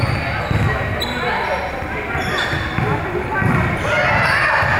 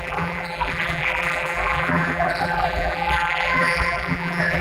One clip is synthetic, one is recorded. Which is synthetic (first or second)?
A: second